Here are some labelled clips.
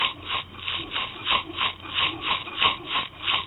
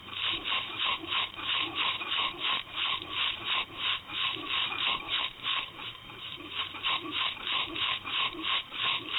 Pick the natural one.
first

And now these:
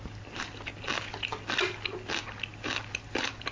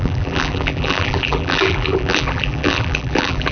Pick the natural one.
first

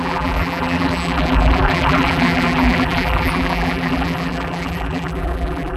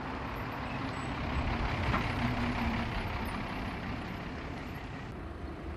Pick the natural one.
second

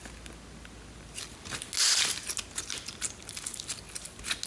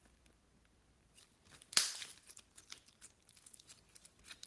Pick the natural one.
first